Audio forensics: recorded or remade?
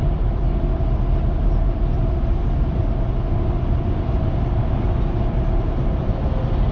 remade